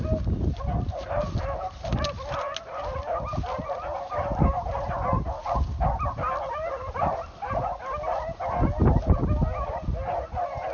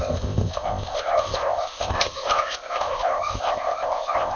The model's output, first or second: second